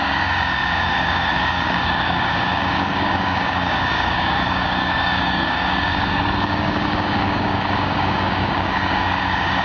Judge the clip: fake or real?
fake